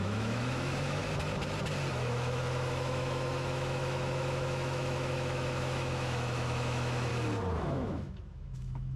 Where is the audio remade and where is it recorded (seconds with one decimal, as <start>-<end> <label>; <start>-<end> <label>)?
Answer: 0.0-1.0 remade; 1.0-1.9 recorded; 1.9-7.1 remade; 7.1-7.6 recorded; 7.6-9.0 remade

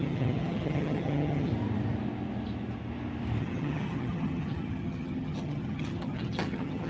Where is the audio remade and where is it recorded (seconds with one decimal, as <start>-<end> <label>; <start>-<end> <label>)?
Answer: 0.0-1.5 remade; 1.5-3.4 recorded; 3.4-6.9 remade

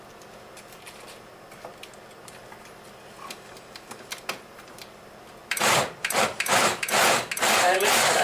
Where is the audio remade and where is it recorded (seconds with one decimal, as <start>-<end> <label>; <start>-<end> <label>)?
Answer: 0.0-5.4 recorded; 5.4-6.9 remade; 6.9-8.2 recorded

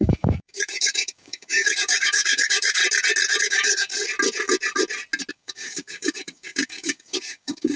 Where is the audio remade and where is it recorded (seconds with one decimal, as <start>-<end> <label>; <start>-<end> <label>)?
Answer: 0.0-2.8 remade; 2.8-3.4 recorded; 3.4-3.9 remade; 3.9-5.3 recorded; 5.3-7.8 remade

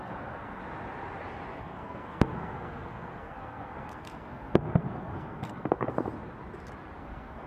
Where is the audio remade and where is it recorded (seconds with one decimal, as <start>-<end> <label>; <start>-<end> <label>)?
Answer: 0.0-0.6 remade; 0.6-1.6 recorded; 1.6-6.1 remade; 6.1-7.0 recorded; 7.0-7.5 remade

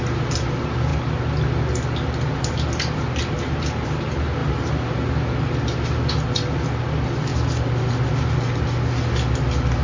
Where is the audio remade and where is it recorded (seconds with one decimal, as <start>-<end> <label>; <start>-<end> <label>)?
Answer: 0.0-9.8 recorded

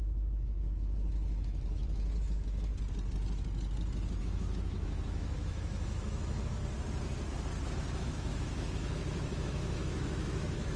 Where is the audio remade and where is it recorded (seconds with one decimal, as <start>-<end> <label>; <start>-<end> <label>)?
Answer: 0.0-2.7 remade; 2.7-4.2 recorded; 4.2-6.6 remade; 6.6-8.0 recorded; 8.0-10.8 remade